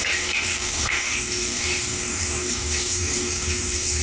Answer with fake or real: fake